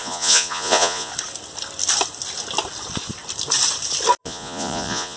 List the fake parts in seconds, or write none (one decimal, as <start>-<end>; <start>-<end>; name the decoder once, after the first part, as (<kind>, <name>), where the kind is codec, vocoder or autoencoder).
0.0-1.1 (vocoder, Vocos); 4.2-5.2